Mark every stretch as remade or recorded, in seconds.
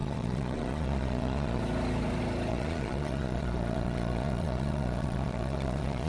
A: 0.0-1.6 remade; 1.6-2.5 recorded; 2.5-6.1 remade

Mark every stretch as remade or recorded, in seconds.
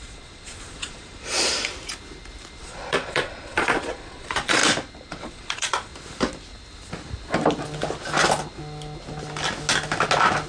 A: 0.0-1.5 remade; 1.5-2.6 recorded; 2.6-4.6 remade; 4.6-5.1 recorded; 5.1-5.9 remade; 5.9-10.5 recorded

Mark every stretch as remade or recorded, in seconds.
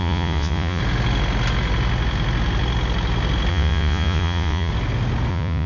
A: 0.0-0.8 remade; 0.8-3.5 recorded; 3.5-4.7 remade; 4.7-5.3 recorded; 5.3-5.7 remade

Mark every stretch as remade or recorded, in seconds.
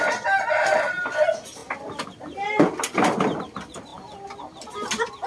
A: 0.0-5.3 recorded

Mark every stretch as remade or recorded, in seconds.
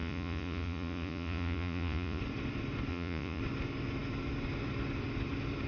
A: 0.0-2.2 remade; 2.2-2.9 recorded; 2.9-3.4 remade; 3.4-5.7 recorded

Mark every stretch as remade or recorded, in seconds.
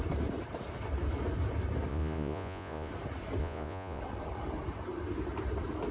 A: 0.0-1.9 recorded; 1.9-2.9 remade; 2.9-3.4 recorded; 3.4-4.0 remade; 4.0-5.9 recorded